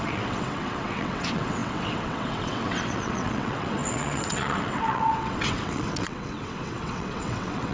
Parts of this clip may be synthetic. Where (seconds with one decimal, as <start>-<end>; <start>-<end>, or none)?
0.0-7.7